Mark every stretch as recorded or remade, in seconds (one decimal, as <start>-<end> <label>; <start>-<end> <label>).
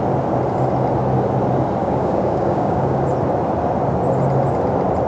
0.0-1.8 recorded; 1.8-3.0 remade; 3.0-5.1 recorded